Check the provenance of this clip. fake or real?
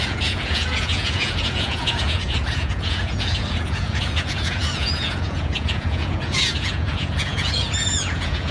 fake